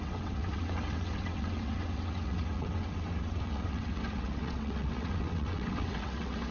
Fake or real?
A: fake